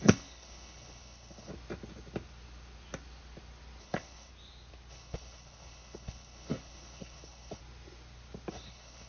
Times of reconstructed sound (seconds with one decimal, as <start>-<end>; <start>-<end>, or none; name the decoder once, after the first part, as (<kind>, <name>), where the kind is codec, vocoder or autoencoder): 0.0-1.5 (codec, HILCodec); 3.8-4.3; 4.9-7.6; 8.5-9.1